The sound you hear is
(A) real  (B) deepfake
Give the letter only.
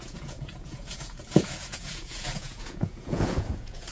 B